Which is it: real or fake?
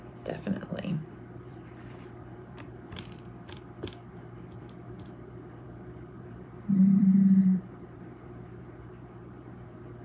fake